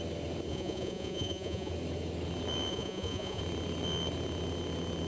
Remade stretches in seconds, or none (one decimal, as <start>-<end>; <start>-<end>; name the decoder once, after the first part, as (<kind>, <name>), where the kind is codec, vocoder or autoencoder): 0.5-1.7 (vocoder, Vocos); 2.7-3.4